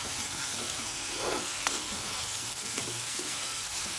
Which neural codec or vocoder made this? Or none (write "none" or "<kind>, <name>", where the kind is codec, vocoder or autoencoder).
codec, SNAC